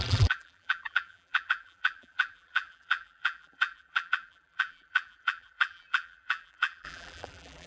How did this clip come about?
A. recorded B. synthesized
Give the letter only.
B